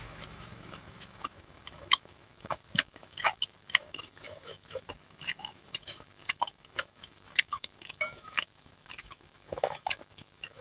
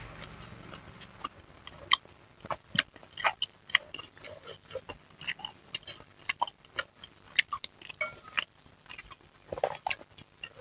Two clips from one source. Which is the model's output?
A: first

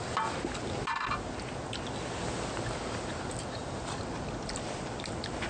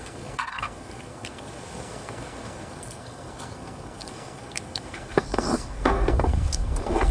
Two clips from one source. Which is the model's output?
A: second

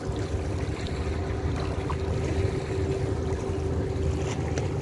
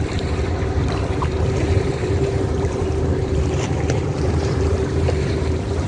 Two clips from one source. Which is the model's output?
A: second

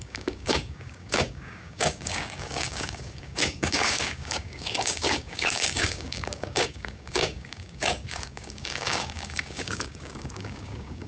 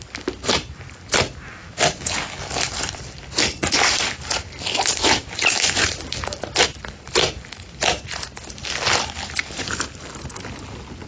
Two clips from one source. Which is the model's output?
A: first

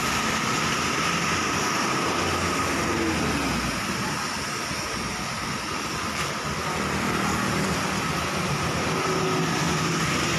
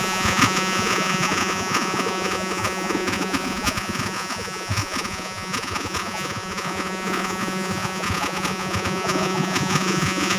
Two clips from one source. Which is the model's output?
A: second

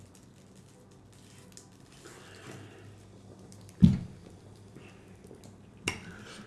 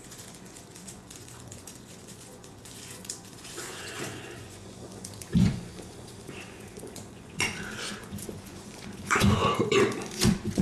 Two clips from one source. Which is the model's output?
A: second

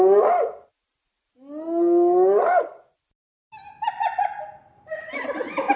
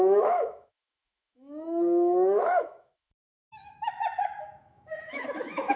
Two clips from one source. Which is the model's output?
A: second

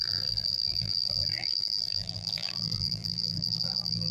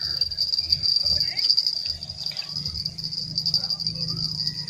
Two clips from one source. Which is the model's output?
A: first